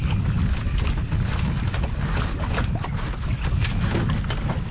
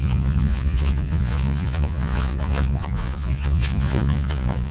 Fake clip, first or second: second